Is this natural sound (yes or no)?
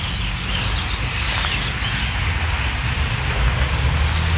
yes